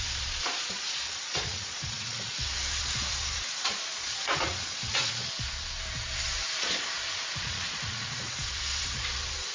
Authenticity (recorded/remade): remade